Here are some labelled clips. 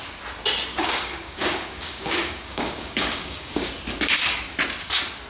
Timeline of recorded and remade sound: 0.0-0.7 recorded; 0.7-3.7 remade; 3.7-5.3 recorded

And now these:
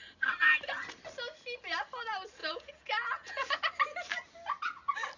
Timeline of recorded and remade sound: 0.0-2.4 recorded; 2.4-3.6 remade; 3.6-5.2 recorded

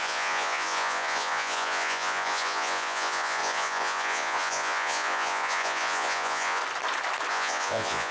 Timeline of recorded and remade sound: 0.0-6.6 remade; 6.6-7.3 recorded; 7.3-8.1 remade